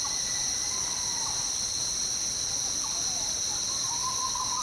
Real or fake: real